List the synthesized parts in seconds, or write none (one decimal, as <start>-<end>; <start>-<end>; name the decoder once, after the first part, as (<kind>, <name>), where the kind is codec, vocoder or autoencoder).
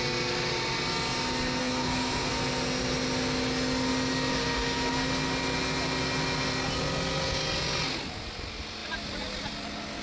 1.6-2.3 (codec, SNAC); 4.3-4.9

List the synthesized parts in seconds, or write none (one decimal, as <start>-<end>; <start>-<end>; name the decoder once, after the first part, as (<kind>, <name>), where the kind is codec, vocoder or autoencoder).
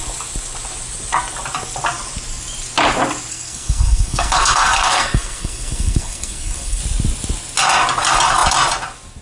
3.3-6.8 (codec, SNAC)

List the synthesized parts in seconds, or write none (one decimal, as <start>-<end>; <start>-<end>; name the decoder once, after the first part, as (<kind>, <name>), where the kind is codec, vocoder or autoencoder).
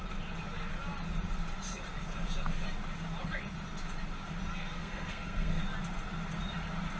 4.5-5.6 (codec, SNAC)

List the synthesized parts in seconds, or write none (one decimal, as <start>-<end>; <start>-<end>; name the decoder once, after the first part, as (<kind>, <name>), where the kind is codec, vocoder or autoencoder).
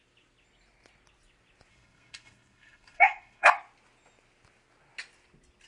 1.7-3.5 (codec, SNAC)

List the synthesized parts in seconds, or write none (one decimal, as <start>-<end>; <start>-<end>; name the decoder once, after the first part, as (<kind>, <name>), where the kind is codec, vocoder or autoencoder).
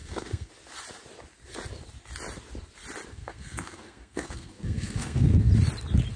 0.0-0.5 (codec, SNAC); 3.1-5.5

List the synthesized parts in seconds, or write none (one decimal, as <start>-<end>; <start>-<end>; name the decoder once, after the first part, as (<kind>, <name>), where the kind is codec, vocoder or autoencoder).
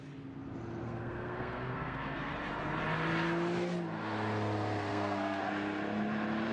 0.8-2.3 (codec, SNAC); 4.9-5.4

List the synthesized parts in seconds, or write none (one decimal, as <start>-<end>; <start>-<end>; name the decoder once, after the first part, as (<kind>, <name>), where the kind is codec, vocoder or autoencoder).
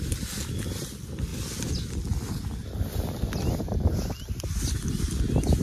none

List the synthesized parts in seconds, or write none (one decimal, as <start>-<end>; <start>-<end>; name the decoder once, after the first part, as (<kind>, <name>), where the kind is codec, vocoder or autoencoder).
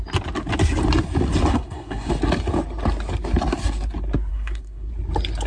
1.5-2.1 (codec, SNAC); 4.3-4.9